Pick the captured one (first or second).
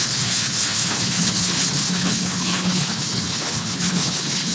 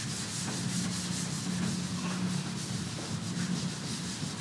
second